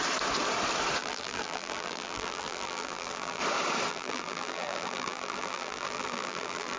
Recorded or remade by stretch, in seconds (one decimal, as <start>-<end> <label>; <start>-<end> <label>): 0.0-1.0 recorded; 1.0-3.4 remade; 3.4-3.9 recorded; 3.9-6.8 remade